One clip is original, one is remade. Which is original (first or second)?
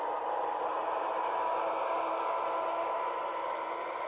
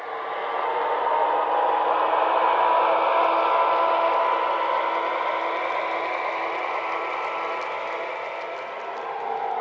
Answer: second